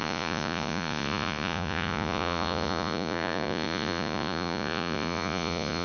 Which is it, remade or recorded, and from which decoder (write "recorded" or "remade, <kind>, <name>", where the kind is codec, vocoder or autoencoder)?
remade, vocoder, Vocos